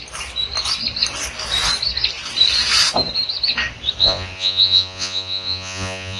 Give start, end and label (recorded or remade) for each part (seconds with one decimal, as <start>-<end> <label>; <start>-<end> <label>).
0.0-4.0 recorded; 4.0-6.2 remade

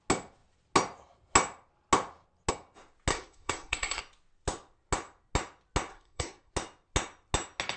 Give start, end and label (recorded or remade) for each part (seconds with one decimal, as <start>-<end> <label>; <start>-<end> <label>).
0.0-3.1 recorded; 3.1-4.0 remade; 4.0-5.9 recorded; 5.9-6.5 remade; 6.5-7.8 recorded

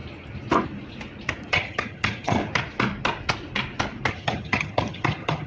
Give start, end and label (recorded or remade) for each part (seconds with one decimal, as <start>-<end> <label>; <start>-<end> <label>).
0.0-1.5 recorded; 1.5-2.4 remade; 2.4-4.1 recorded; 4.1-5.5 remade

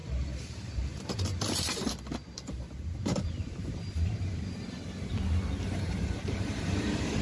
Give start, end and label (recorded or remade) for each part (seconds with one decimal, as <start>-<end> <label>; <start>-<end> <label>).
0.0-1.3 remade; 1.3-5.6 recorded; 5.6-7.2 remade

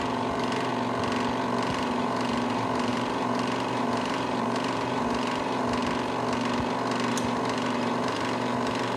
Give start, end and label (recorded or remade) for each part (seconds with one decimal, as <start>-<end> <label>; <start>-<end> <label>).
0.0-0.7 remade; 0.7-1.7 recorded; 1.7-5.8 remade; 5.8-7.1 recorded; 7.1-9.0 remade